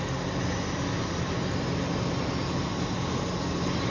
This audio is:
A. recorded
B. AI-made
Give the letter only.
A